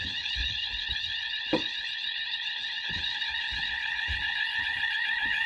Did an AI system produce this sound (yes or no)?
yes